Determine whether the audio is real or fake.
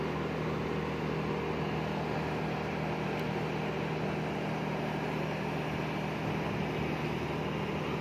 real